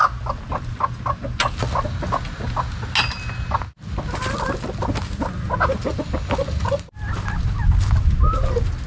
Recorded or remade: recorded